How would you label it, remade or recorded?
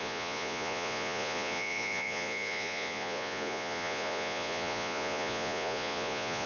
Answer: remade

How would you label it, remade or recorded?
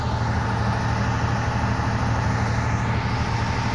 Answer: recorded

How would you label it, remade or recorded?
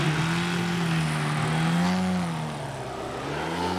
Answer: recorded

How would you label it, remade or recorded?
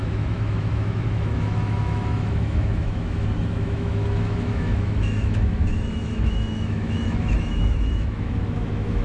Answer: remade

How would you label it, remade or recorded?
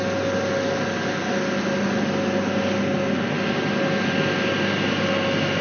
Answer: recorded